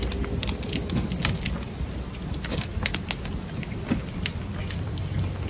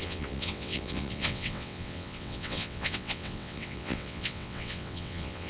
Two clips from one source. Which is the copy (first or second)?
second